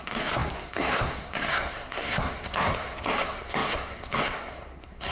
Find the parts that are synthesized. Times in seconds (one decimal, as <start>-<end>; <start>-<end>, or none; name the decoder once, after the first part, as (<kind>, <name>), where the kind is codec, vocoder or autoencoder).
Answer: 0.0-5.1 (codec, SNAC)